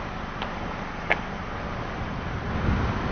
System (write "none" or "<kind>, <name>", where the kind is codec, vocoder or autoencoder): none